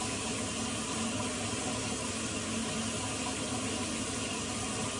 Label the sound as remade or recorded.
recorded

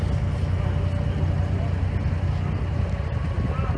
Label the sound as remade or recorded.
recorded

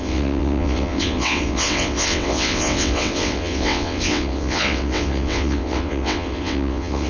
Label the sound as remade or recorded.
remade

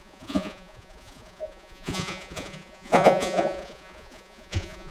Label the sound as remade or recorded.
remade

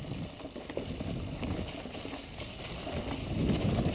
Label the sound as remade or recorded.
recorded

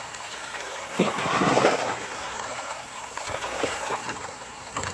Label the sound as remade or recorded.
remade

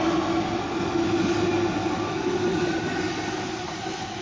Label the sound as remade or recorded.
recorded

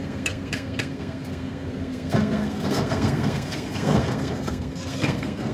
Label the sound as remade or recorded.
remade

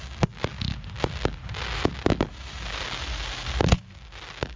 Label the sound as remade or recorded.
recorded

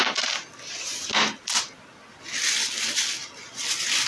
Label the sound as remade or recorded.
recorded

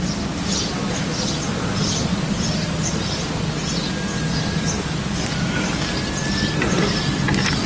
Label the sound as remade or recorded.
recorded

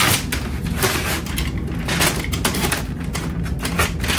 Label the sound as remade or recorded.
recorded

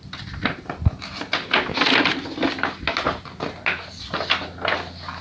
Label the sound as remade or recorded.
recorded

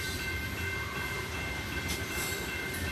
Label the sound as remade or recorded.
remade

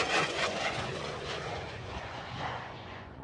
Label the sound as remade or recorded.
remade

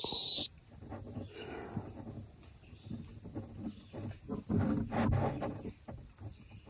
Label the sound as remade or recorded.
recorded